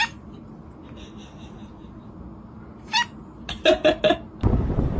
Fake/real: real